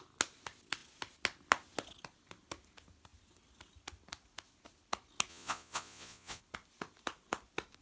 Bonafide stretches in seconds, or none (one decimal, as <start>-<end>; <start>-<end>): 0.0-5.3; 6.4-7.8